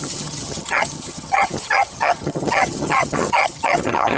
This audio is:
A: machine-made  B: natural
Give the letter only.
A